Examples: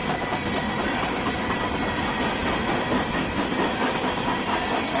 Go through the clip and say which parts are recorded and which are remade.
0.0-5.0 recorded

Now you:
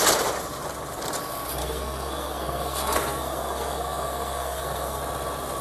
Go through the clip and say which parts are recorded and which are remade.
0.0-1.6 recorded; 1.6-5.0 remade; 5.0-5.6 recorded

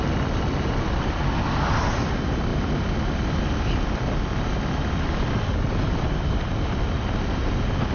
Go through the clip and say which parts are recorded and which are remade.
0.0-7.9 recorded